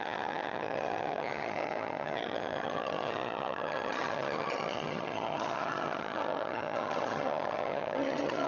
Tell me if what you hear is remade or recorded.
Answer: remade